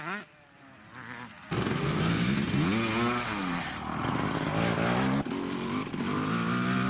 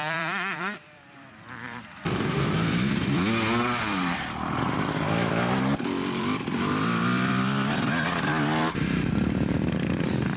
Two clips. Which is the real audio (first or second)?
first